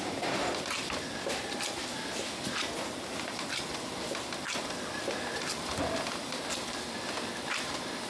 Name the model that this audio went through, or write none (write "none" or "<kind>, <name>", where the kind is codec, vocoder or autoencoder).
none